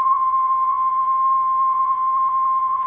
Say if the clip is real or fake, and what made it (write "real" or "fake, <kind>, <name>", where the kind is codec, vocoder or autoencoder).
fake, vocoder, BigVGAN v2